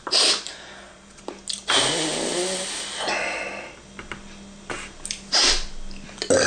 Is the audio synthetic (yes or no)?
no